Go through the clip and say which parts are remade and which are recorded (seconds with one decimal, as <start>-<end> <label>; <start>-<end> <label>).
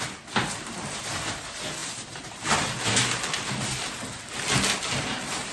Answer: 0.0-5.5 recorded